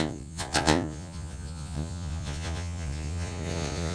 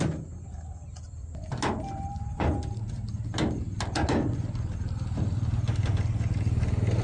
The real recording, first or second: second